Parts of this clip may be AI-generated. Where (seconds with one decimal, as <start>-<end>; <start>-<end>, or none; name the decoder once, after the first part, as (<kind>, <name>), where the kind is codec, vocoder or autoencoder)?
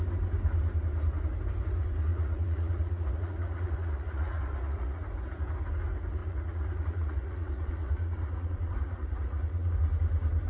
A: 2.1-5.1 (vocoder, Vocos); 6.2-9.7